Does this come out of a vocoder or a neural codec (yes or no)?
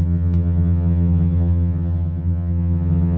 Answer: yes